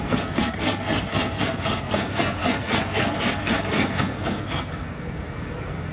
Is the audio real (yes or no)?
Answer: no